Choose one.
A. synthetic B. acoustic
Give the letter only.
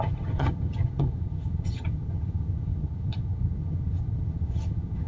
A